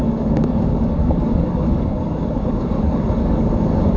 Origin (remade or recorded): remade